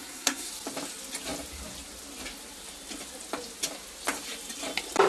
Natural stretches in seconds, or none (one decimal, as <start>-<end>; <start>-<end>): 0.5-5.1